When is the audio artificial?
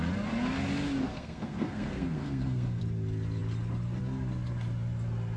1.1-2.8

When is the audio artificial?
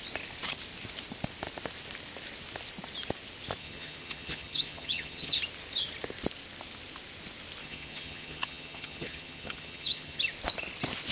3.6-5.4; 7.6-10.2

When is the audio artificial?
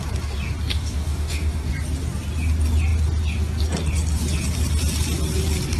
0.7-1.7